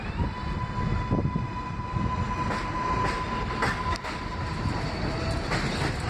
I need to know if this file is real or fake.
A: real